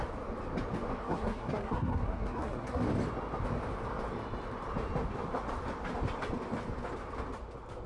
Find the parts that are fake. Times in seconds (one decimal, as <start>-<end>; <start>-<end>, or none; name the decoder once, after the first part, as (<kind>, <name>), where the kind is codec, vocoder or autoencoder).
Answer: 1.0-2.8 (codec, SNAC)